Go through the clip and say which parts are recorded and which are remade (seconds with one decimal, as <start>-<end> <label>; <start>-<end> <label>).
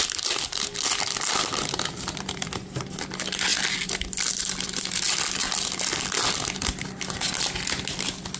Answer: 0.0-8.4 recorded